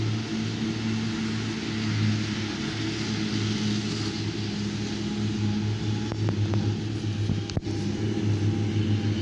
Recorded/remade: recorded